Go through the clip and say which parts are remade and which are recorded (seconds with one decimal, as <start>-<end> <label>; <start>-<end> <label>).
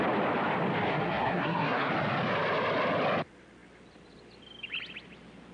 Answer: 0.0-0.9 recorded; 0.9-1.9 remade; 1.9-5.5 recorded